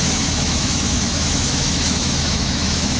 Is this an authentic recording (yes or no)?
no